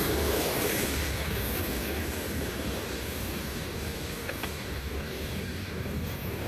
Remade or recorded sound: remade